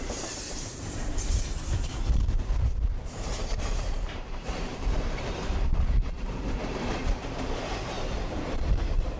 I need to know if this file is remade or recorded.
remade